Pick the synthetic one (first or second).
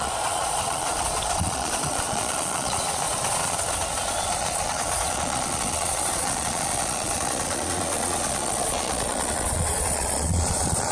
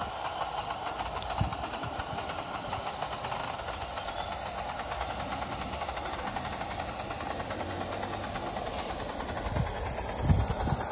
first